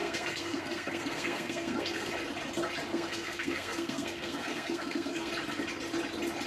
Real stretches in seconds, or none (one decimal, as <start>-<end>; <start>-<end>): 2.1-2.9; 5.3-6.5